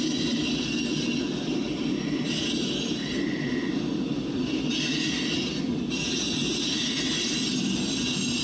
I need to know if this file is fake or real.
real